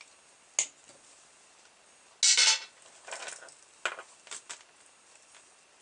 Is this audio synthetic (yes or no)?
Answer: no